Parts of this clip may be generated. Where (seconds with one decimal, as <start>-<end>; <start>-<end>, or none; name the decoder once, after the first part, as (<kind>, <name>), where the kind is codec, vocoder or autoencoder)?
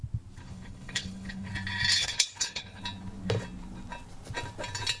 0.4-1.5 (codec, HILCodec); 2.0-2.8